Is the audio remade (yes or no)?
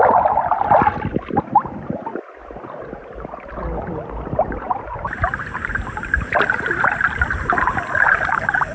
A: no